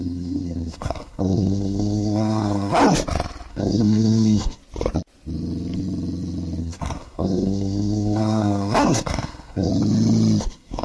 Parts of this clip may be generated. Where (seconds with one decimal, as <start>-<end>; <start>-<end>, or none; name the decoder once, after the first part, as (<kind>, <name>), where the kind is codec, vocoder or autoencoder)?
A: 0.0-2.8 (codec, SNAC); 3.5-4.6; 6.6-9.7; 10.4-10.8